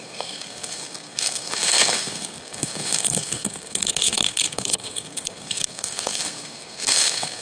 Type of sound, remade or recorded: remade